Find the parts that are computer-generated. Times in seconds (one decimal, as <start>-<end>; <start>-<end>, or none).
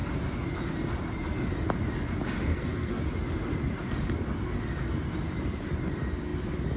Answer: 2.5-3.0